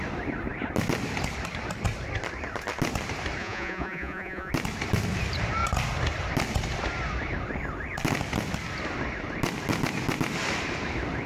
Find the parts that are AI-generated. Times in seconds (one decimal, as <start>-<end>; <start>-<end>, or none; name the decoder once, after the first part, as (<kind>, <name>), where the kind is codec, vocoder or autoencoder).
3.4-4.5 (vocoder, Vocos)

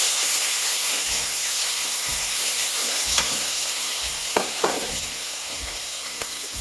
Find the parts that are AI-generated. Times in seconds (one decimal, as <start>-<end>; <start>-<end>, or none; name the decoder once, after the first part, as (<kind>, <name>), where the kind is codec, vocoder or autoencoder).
0.0-6.6 (codec, SNAC)

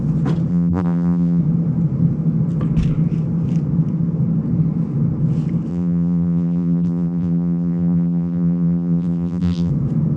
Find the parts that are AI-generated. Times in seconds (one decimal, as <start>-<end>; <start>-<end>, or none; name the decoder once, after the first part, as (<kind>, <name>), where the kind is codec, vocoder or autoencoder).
0.5-1.4 (vocoder, BigVGAN v2); 5.7-9.7

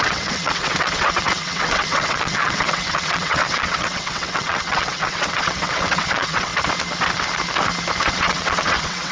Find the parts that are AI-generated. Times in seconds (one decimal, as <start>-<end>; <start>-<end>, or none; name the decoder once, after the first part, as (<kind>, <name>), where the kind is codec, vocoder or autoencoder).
0.0-6.5 (vocoder, WaveNeXt); 8.0-9.1

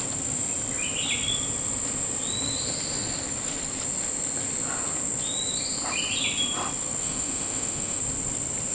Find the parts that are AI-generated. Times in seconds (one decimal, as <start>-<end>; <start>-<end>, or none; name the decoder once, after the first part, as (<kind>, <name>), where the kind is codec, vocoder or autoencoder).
7.0-8.0 (autoencoder, DAC-VAE)

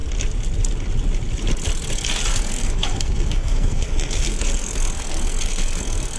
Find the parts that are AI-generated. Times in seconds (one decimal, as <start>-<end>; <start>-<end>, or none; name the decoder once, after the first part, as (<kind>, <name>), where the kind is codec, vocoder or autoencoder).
2.3-6.2 (codec, SNAC)

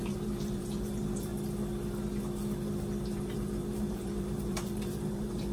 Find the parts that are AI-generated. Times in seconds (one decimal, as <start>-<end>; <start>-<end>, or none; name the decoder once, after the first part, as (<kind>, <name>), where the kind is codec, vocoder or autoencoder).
0.0-1.3 (vocoder, BigVGAN v2); 3.0-5.5